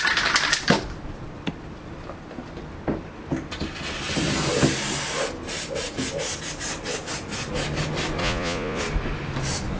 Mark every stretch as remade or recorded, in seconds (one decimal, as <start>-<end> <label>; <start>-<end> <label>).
0.0-8.2 recorded; 8.2-8.8 remade; 8.8-9.8 recorded